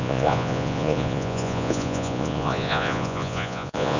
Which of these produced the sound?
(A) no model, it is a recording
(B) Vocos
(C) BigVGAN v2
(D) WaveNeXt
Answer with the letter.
B